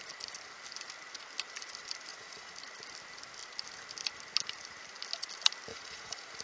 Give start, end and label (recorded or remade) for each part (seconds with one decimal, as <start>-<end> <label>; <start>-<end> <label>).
0.0-2.1 recorded; 2.1-2.6 remade; 2.6-5.7 recorded; 5.7-6.4 remade